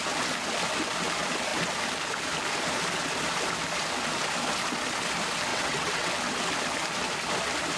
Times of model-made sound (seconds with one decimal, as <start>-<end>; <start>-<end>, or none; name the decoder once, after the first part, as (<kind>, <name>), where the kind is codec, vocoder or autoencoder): 5.5-6.1 (vocoder, WaveNeXt)